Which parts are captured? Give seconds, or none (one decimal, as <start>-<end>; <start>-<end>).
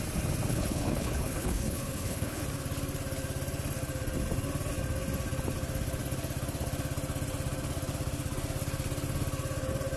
0.0-0.5; 2.4-10.0